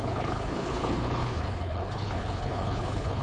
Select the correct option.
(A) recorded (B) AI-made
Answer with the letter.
B